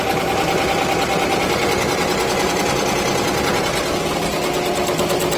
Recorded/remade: recorded